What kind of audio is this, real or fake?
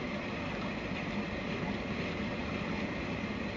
real